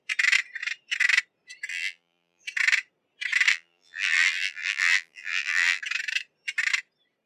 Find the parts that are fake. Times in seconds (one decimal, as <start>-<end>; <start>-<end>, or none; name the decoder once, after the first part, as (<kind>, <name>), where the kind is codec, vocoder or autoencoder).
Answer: 1.7-2.4 (vocoder, BigVGAN v2); 3.5-5.8